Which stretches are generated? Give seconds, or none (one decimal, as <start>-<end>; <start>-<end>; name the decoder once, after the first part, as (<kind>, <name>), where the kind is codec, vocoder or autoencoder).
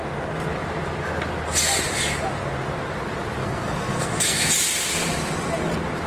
3.4-4.5 (codec, SNAC)